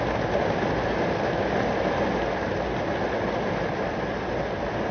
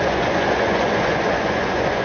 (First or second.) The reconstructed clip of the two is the second